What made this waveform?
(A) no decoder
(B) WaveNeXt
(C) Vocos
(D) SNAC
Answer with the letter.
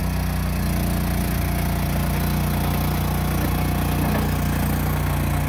A